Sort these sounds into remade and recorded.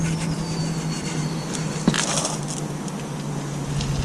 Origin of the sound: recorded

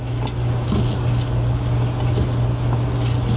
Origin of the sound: recorded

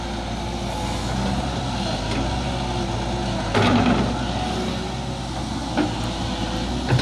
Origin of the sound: recorded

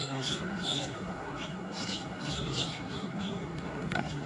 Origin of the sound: remade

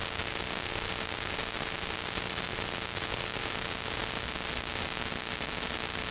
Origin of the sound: recorded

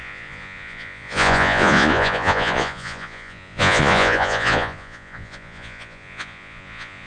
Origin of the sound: remade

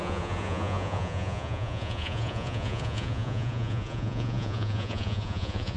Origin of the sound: remade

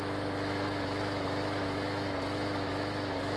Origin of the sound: remade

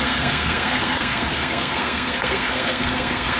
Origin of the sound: remade